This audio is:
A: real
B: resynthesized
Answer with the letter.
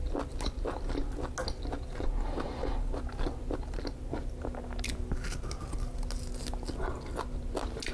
A